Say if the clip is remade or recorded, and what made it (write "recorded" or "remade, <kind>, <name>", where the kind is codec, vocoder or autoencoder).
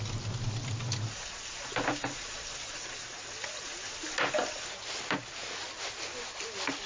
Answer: recorded